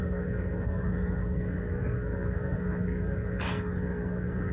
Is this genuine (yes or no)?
no